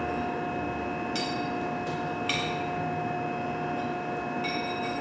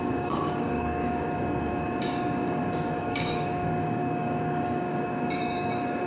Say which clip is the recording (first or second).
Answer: first